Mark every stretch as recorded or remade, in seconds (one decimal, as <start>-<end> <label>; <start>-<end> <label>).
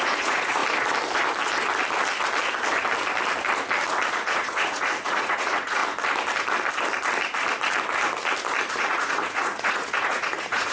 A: 0.0-0.6 remade; 0.6-4.1 recorded; 4.1-5.8 remade; 5.8-8.7 recorded; 8.7-10.7 remade